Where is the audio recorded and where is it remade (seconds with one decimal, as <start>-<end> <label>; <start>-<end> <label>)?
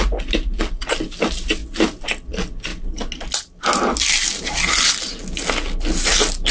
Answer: 0.0-6.5 recorded